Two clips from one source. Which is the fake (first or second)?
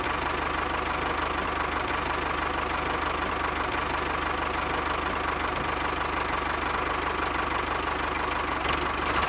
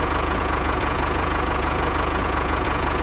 second